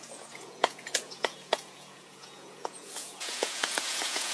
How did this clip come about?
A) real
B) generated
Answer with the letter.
B